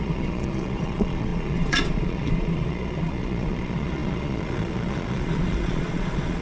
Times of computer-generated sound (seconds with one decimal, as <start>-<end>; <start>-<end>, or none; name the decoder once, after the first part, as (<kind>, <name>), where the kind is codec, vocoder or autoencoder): 0.0-6.4 (vocoder, Vocos)